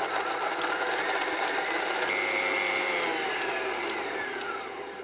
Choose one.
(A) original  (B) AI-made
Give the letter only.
A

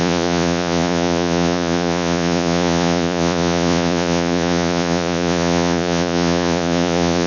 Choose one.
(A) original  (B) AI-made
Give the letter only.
B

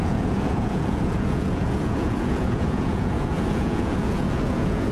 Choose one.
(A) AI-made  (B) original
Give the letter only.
A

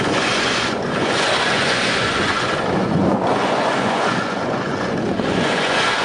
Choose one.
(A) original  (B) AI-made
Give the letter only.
B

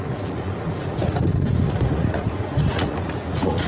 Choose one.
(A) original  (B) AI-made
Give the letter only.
B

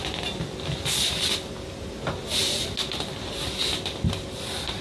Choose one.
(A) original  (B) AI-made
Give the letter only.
A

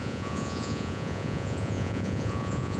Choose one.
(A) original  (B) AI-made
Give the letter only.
B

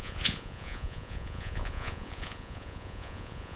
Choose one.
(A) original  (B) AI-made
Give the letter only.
B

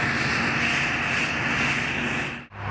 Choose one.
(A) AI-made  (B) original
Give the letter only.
B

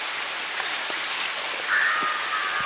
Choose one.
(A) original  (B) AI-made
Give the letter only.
A